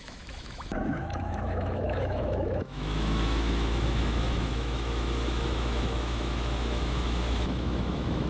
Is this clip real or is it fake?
fake